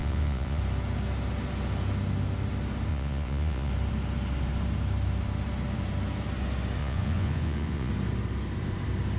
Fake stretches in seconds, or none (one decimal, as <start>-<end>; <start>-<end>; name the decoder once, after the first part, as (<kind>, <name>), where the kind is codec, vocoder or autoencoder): 0.0-0.6 (vocoder, Vocos); 2.9-3.7; 6.8-7.9